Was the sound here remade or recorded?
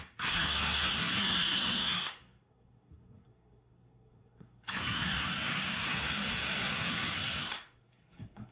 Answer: remade